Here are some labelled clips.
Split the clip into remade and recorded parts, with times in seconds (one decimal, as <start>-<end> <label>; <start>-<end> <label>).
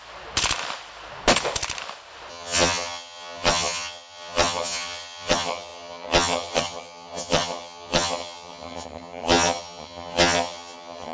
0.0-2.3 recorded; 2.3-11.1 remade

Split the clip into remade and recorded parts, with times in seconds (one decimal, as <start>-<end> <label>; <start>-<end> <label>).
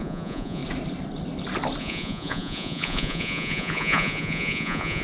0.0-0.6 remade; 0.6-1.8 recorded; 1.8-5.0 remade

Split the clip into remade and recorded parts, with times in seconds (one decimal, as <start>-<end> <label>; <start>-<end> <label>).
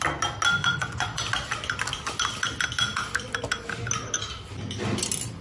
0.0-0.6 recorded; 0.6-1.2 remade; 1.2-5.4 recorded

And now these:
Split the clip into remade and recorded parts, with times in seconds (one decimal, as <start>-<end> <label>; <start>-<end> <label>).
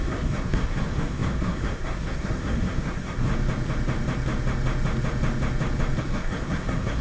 0.0-3.3 remade; 3.3-6.0 recorded; 6.0-7.0 remade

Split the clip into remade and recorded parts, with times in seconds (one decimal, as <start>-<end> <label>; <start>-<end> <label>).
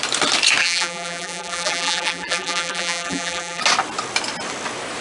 0.0-0.6 recorded; 0.6-3.6 remade; 3.6-5.0 recorded